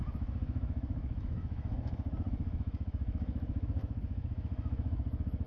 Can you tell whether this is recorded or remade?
remade